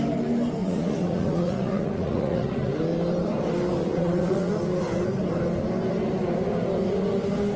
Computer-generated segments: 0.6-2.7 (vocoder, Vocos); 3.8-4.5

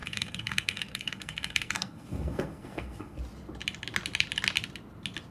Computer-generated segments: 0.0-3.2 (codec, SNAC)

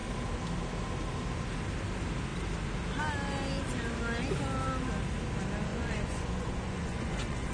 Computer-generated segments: 5.7-7.5 (vocoder, Vocos)